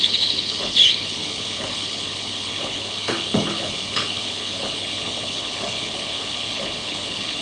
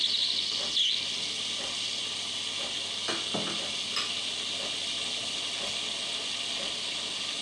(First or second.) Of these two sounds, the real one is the second